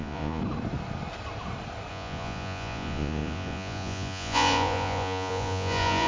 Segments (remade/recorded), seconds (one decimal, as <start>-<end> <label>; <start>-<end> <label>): 0.0-0.4 remade; 0.4-1.9 recorded; 1.9-6.1 remade